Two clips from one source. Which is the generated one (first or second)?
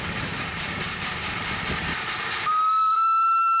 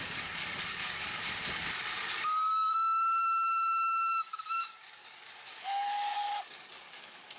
second